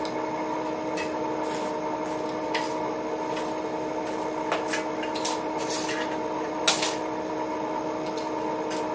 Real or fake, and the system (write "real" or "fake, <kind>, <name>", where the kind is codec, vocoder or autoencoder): real